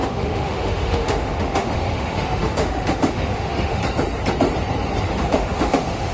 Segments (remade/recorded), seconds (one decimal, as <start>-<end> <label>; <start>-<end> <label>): 0.0-3.8 remade; 3.8-5.1 recorded; 5.1-6.1 remade